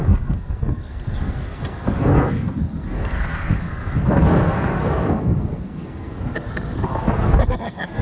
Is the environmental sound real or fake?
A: fake